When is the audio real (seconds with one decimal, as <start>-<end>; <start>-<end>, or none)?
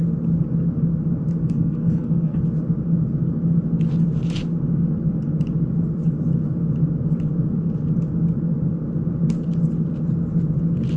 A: 0.0-1.4; 2.4-11.0